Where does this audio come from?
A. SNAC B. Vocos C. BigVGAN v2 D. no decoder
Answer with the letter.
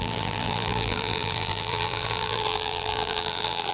C